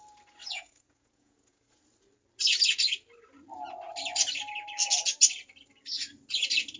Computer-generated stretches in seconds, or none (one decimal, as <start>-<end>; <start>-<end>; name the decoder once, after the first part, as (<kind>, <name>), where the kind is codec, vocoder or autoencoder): 0.4-1.8 (vocoder, Vocos)